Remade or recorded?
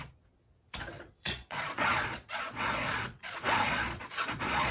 remade